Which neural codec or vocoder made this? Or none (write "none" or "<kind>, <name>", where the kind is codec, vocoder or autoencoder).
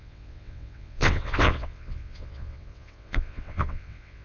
vocoder, WaveNeXt